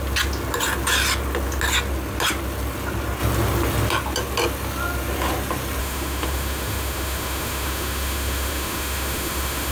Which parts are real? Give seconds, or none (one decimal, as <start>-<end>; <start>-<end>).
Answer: 0.0-5.8